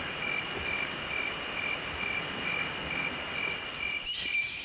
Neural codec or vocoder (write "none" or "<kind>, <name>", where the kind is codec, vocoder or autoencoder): none